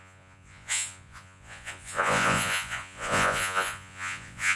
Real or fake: fake